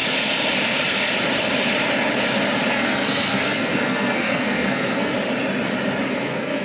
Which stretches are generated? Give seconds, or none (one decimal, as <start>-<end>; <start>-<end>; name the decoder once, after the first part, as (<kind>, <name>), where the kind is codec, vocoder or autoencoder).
2.7-5.1 (codec, SNAC); 6.1-6.6